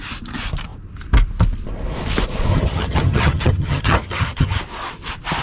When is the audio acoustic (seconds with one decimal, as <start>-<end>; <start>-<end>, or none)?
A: 0.0-2.5; 4.6-5.4